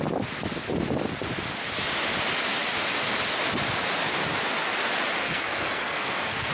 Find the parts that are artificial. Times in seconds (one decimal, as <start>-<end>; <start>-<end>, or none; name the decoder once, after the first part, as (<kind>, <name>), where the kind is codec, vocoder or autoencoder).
5.2-6.5 (codec, SNAC)

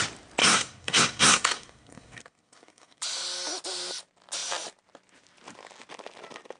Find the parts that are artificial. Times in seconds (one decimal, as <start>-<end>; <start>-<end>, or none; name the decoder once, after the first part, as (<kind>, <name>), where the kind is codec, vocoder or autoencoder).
0.4-3.0 (codec, SNAC)

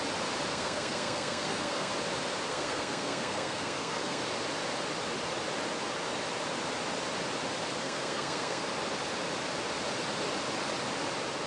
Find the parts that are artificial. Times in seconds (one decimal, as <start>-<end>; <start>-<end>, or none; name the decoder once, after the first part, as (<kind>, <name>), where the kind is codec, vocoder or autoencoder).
0.5-1.9 (codec, SNAC); 2.5-4.2; 7.8-8.6

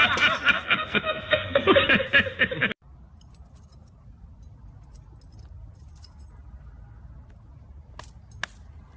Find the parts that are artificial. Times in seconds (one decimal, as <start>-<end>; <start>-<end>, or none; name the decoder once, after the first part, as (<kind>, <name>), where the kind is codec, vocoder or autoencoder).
0.4-1.7 (codec, SNAC)

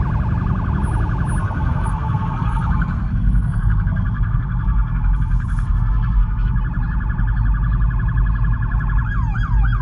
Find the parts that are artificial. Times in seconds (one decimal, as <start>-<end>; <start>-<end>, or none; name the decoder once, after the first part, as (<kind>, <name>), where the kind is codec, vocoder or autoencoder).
1.4-6.6 (codec, SNAC)

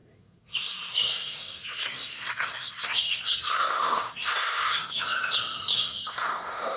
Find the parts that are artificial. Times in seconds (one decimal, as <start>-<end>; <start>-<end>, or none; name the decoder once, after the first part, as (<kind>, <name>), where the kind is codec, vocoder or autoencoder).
0.0-6.8 (codec, SNAC)

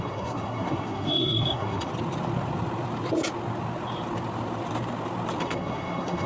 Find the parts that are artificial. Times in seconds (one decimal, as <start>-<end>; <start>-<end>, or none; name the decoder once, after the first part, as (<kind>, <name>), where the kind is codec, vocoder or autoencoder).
0.0-1.9 (codec, SNAC); 5.4-6.3